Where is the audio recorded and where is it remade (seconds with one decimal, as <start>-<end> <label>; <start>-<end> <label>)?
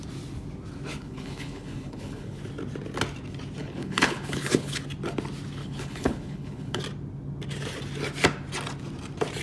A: 0.0-0.9 recorded; 0.9-2.4 remade; 2.4-3.6 recorded; 3.6-4.8 remade; 4.8-5.6 recorded; 5.6-6.8 remade; 6.8-9.4 recorded